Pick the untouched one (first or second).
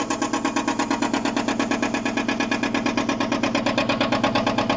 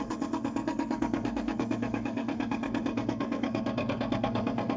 first